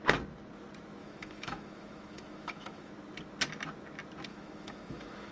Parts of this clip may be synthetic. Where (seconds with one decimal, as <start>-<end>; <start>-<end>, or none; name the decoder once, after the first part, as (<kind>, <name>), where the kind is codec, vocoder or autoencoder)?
1.0-2.9 (autoencoder, DAC-VAE); 4.3-5.3